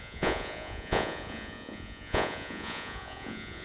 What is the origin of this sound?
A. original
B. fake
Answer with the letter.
B